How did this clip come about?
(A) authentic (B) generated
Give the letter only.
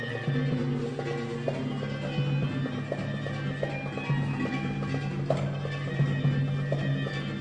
A